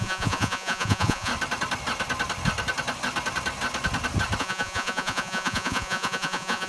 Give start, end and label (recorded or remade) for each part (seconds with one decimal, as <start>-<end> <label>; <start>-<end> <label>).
0.0-1.3 remade; 1.3-4.4 recorded; 4.4-6.7 remade